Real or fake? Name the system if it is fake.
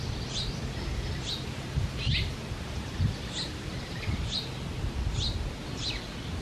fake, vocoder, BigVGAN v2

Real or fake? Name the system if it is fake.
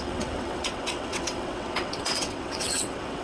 fake, vocoder, WaveNeXt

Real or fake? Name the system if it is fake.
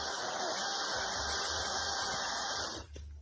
real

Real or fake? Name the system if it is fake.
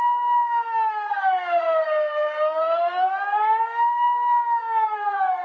fake, codec, SNAC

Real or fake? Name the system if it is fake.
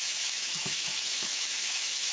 fake, autoencoder, DAC-VAE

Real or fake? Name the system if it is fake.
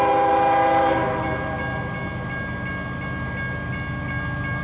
real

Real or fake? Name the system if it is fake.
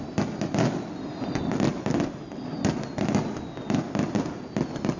real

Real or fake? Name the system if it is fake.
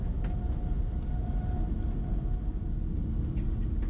real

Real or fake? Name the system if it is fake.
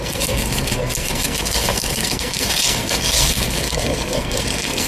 fake, codec, SNAC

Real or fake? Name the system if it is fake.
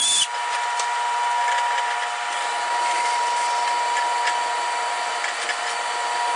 real